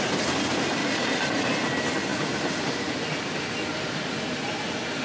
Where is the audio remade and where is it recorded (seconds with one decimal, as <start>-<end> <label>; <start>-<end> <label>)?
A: 0.0-0.8 recorded; 0.8-1.5 remade; 1.5-5.0 recorded